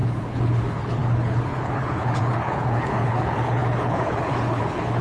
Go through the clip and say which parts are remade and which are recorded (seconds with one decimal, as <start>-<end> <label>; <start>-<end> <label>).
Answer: 0.0-5.0 remade